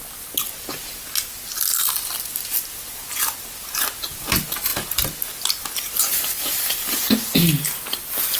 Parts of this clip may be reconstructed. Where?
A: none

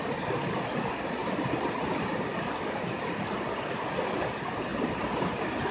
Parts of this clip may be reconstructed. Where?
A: 1.2-1.7 (vocoder, BigVGAN v2); 4.7-5.2

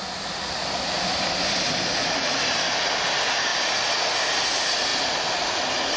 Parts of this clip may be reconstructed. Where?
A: none

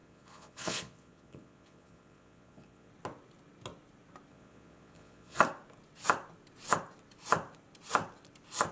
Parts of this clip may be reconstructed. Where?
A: 0.0-2.9 (vocoder, Vocos); 4.3-5.4

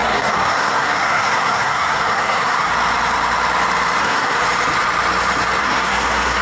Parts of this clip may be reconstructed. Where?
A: 0.0-2.7 (codec, SNAC); 4.0-4.4; 5.6-6.4

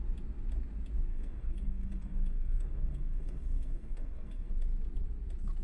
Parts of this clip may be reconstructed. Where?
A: 1.1-4.5 (codec, SNAC)

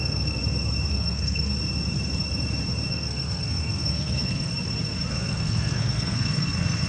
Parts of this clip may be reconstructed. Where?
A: 0.0-0.4 (codec, SNAC); 0.9-1.5; 2.9-4.5; 5.1-6.9